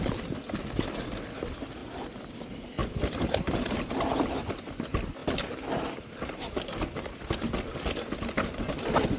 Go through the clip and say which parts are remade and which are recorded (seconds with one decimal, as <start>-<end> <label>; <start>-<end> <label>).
0.0-1.8 recorded; 1.8-2.4 remade; 2.4-2.8 recorded; 2.8-3.9 remade; 3.9-9.2 recorded